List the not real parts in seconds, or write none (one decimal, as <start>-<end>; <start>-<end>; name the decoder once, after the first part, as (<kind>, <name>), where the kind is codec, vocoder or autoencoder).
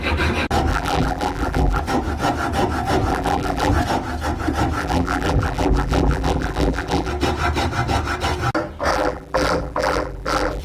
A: 0.7-1.8 (vocoder, BigVGAN v2); 3.1-3.7; 4.8-7.1; 8.9-10.6